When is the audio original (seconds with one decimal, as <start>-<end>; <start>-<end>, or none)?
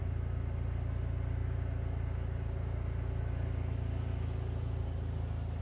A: 0.0-5.6